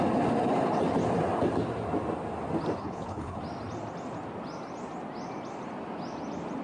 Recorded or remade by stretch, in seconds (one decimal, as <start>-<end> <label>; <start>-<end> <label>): 0.0-2.8 recorded; 2.8-3.4 remade; 3.4-6.6 recorded